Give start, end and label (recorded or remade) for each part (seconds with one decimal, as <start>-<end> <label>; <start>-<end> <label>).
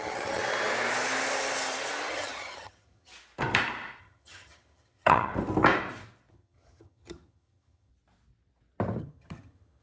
0.0-0.4 remade; 0.4-2.1 recorded; 2.1-3.1 remade; 3.1-4.0 recorded; 4.0-5.3 remade; 5.3-6.3 recorded; 6.3-7.9 remade; 7.9-9.0 recorded; 9.0-9.8 remade